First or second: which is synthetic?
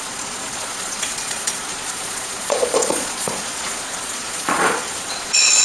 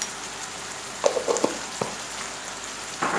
first